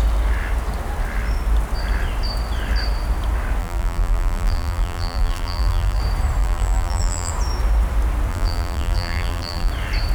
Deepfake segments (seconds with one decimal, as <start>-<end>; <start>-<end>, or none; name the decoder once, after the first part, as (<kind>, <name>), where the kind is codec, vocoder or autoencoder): 3.6-6.0 (vocoder, BigVGAN v2); 6.4-7.3; 8.3-9.7